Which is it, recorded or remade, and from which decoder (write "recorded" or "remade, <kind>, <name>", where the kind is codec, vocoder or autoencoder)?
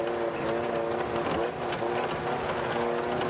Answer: recorded